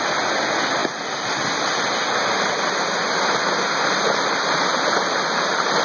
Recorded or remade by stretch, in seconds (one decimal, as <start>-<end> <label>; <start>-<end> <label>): 0.0-5.8 recorded